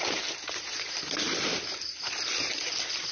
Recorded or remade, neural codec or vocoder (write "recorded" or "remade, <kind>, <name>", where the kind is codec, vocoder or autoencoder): recorded